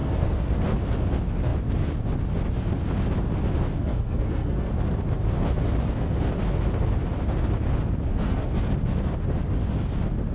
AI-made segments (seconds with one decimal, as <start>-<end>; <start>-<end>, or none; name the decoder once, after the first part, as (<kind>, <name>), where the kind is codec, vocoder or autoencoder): 0.0-0.5 (codec, SNAC); 3.8-4.7; 8.1-8.6